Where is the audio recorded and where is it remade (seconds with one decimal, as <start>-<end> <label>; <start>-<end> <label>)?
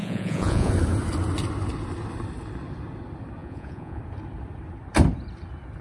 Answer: 0.0-0.7 remade; 0.7-3.4 recorded; 3.4-4.0 remade; 4.0-5.8 recorded